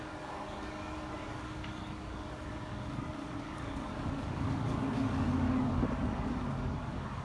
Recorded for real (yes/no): no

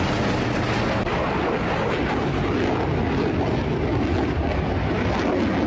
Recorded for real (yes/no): yes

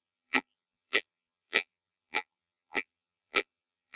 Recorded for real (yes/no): no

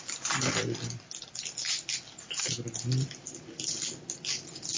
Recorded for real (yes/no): yes